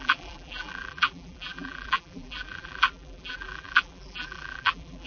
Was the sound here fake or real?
fake